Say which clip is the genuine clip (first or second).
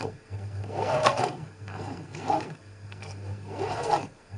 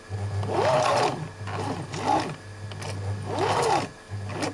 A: second